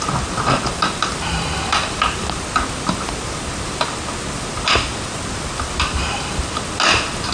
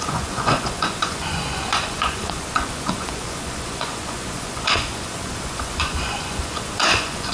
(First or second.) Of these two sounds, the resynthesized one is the second